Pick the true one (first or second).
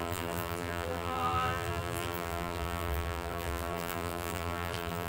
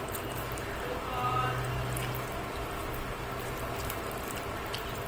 second